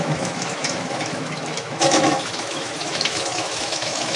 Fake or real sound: fake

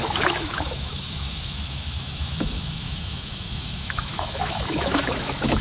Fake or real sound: fake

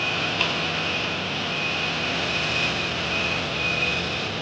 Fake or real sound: real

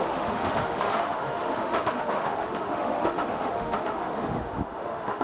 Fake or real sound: fake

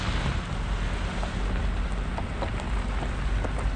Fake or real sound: real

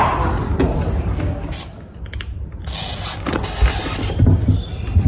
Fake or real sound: real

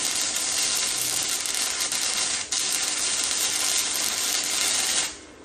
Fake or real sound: real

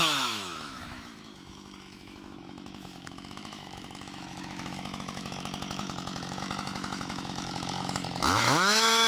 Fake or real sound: fake